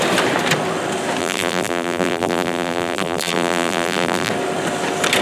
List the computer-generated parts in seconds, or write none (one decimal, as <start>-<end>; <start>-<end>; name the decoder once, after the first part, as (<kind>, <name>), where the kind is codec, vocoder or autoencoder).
1.2-4.3 (vocoder, BigVGAN v2)